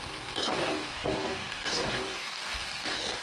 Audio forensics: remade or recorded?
remade